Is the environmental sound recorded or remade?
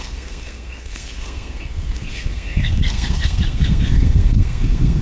remade